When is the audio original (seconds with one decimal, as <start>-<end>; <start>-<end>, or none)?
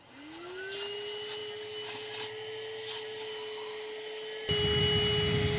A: 0.0-5.6